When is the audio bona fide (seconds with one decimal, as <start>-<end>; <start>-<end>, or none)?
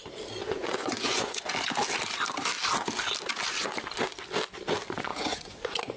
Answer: 0.0-0.4; 1.5-5.1